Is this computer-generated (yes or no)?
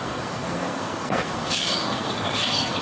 yes